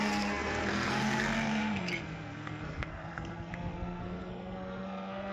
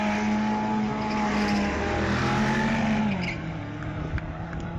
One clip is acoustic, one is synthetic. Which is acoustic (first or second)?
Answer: second